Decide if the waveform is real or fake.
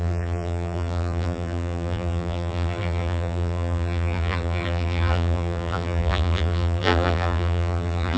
fake